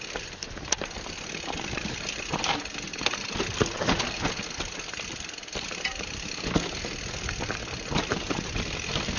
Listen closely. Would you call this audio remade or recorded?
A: recorded